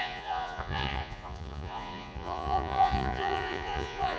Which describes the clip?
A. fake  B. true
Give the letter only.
A